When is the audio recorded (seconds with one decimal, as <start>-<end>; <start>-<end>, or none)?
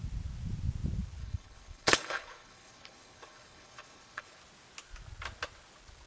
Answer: 0.0-1.2; 4.4-6.1